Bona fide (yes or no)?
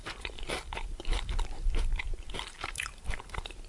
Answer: no